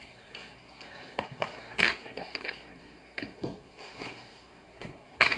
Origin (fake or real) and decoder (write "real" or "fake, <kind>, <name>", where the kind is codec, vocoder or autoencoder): fake, codec, SNAC